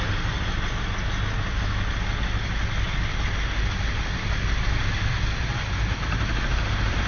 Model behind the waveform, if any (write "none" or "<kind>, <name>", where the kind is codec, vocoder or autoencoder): none